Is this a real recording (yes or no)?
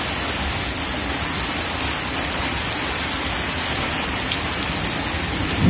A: yes